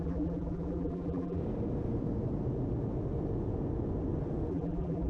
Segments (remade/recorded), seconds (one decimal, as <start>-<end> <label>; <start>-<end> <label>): 0.0-1.4 remade; 1.4-4.5 recorded; 4.5-5.1 remade